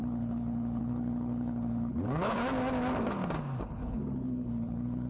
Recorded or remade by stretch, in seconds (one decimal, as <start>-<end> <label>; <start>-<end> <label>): 0.0-2.4 remade; 2.4-3.6 recorded; 3.6-5.1 remade

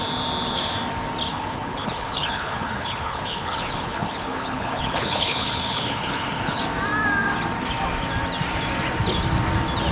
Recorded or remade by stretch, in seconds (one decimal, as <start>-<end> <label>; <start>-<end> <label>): 0.0-1.3 recorded; 1.3-6.6 remade; 6.6-9.9 recorded